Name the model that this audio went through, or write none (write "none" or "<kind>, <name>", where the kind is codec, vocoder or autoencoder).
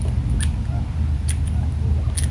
none